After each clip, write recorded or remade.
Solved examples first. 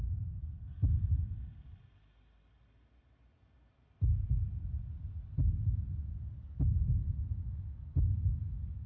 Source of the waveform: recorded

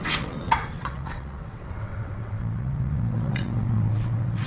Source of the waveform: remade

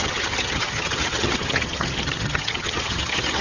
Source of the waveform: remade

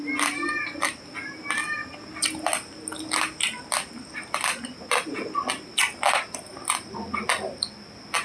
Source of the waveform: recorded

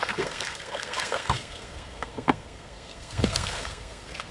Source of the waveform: remade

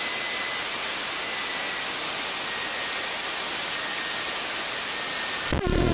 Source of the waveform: recorded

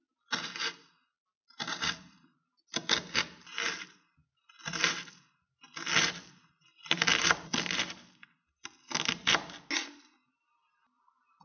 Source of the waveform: recorded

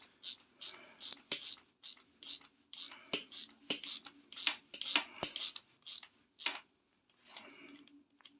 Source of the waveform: recorded